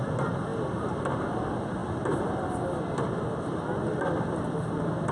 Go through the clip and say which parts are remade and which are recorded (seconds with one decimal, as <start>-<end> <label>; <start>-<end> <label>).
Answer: 0.0-5.1 recorded